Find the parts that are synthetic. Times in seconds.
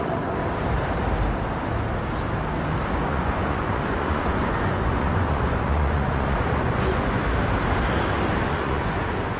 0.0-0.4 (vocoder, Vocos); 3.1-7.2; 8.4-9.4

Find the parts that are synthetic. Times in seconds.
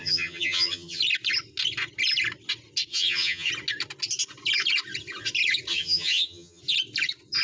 0.0-1.0 (vocoder, HiFi-GAN); 2.9-3.5; 5.7-6.6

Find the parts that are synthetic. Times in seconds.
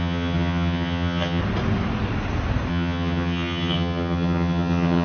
0.0-1.4 (vocoder, HiFi-GAN); 2.7-5.0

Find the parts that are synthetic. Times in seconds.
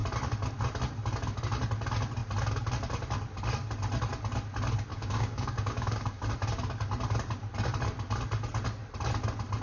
4.9-6.2 (codec, DAC)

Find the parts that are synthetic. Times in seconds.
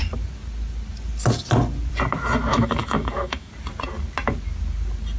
2.5-3.5 (autoencoder, DAC-VAE)